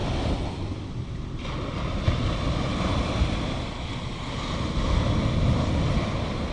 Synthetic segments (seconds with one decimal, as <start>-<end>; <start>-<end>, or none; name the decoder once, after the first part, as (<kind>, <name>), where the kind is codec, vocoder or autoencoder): none